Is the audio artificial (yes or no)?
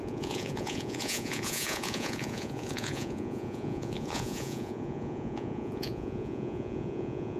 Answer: yes